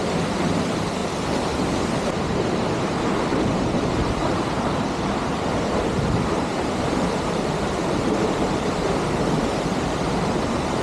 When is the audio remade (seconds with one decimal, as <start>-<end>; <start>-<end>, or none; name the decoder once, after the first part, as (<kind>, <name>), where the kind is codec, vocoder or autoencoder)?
0.0-10.8 (vocoder, BigVGAN v2)